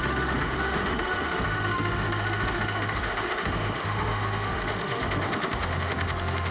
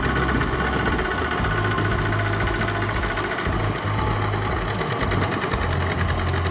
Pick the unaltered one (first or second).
second